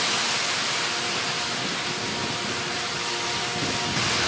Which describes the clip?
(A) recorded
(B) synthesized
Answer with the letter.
A